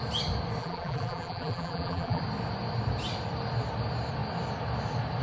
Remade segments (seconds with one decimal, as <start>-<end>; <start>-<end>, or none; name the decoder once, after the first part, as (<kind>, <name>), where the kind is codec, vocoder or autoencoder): 0.6-2.2 (vocoder, BigVGAN v2)